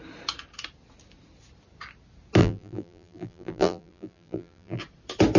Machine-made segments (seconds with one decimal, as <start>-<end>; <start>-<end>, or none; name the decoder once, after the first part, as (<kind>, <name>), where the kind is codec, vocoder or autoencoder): 2.4-4.8 (vocoder, BigVGAN v2)